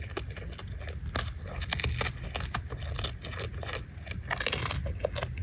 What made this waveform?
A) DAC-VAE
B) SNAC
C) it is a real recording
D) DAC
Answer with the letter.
C